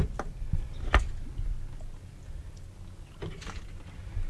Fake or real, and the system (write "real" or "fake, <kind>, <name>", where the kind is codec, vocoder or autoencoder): real